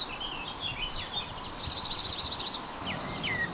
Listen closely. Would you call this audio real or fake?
real